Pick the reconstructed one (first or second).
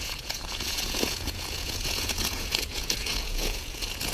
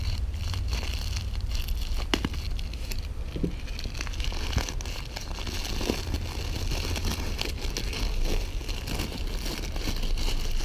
first